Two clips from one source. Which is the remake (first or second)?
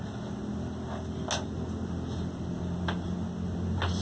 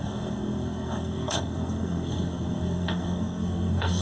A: second